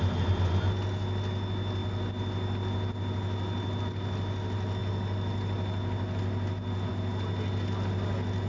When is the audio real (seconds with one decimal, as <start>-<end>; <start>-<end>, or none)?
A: 0.0-8.5